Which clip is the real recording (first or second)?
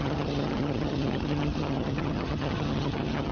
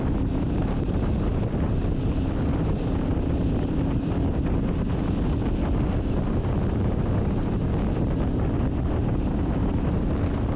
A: second